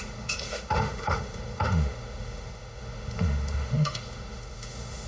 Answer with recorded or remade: remade